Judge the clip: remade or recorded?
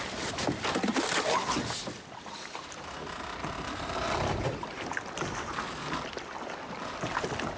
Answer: remade